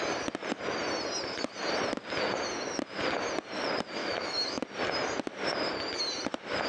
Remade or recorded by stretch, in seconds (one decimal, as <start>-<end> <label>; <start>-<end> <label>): 0.0-4.0 recorded; 4.0-4.6 remade; 4.6-6.7 recorded